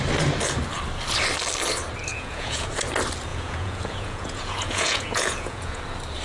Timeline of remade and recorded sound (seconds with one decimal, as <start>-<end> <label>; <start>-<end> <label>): 0.0-2.1 recorded; 2.1-2.7 remade; 2.7-3.3 recorded; 3.3-5.8 remade; 5.8-6.2 recorded